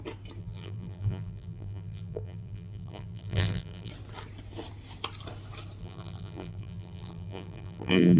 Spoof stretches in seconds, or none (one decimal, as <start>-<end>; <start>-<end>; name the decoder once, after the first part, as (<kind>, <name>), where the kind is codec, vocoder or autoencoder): 0.4-3.9 (vocoder, BigVGAN v2); 5.8-8.2